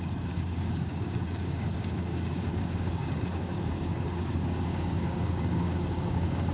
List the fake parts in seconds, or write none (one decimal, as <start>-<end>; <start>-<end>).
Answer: 0.0-6.5